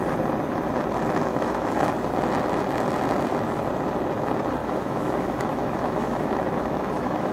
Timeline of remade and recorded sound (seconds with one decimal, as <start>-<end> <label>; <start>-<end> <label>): 0.0-1.3 recorded; 1.3-1.9 remade; 1.9-4.6 recorded; 4.6-7.3 remade